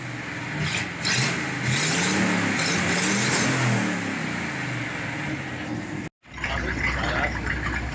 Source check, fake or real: real